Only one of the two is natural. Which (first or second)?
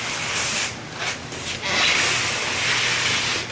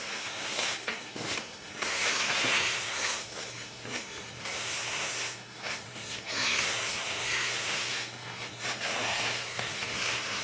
first